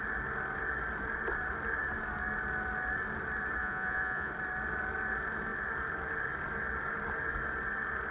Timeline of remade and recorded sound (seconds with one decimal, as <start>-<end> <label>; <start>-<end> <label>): 0.0-3.6 recorded; 3.6-4.3 remade; 4.3-8.1 recorded